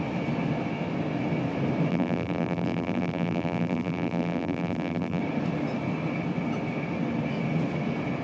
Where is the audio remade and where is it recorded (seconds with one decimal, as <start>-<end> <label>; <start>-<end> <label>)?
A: 0.0-1.9 recorded; 1.9-5.2 remade; 5.2-8.2 recorded